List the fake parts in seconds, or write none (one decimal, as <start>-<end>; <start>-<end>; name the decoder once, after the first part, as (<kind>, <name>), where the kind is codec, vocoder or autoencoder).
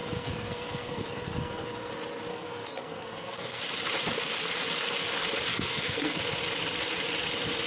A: 0.0-1.9 (codec, SNAC); 2.3-3.6; 5.5-6.2